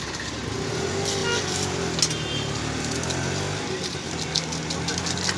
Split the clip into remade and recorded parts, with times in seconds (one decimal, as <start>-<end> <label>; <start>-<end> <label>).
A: 0.0-5.4 recorded